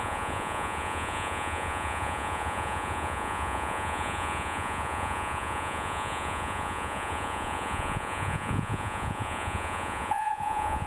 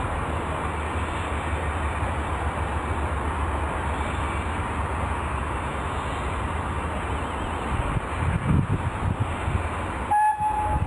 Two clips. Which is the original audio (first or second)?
second